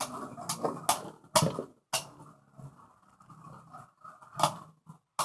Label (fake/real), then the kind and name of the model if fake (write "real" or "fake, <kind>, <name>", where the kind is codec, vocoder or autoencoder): real